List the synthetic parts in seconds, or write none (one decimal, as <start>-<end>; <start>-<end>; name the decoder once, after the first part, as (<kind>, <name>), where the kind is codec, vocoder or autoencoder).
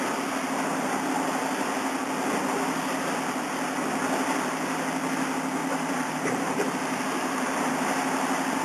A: 5.6-7.7 (vocoder, BigVGAN v2)